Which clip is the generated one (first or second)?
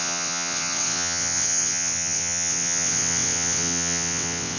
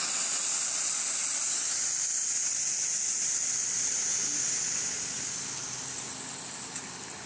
first